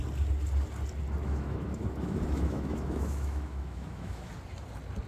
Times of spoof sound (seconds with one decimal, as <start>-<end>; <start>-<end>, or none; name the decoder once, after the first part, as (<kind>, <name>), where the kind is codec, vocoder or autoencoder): 1.2-4.3 (autoencoder, DAC-VAE)